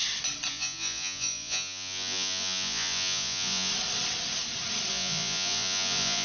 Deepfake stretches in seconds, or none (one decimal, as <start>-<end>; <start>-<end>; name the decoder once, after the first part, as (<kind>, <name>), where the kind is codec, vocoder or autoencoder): 0.5-3.7 (vocoder, Vocos); 4.9-6.2